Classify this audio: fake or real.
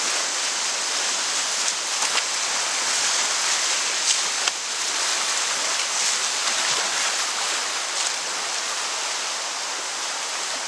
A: real